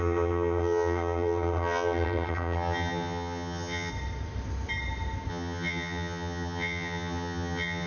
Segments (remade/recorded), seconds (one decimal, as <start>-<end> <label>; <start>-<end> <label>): 0.0-3.9 remade; 3.9-5.3 recorded; 5.3-7.9 remade